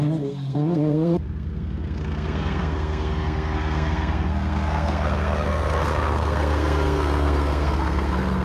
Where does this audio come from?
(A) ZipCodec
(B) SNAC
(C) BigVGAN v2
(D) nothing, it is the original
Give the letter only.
B